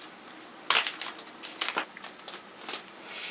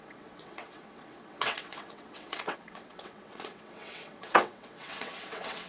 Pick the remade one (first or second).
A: second